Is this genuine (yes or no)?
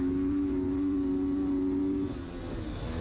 yes